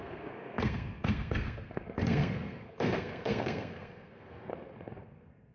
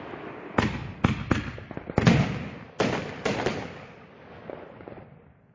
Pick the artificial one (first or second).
first